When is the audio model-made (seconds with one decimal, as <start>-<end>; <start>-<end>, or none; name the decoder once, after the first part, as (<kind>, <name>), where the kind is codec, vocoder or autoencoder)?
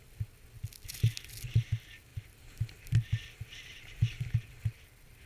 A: none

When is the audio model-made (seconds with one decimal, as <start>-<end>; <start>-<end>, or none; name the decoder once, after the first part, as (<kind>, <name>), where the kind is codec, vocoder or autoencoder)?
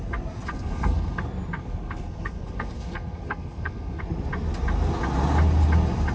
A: 0.5-1.2 (codec, SNAC); 1.6-4.0